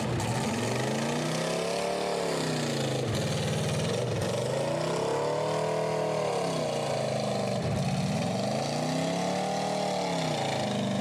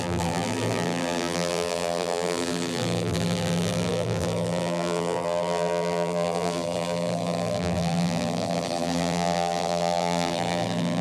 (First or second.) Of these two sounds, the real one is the first